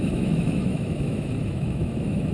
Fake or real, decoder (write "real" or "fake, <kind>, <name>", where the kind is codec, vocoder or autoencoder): fake, autoencoder, DAC-VAE